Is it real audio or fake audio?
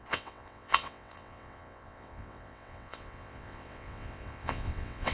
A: fake